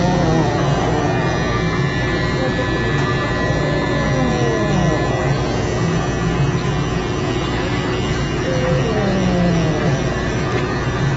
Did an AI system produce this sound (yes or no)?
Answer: no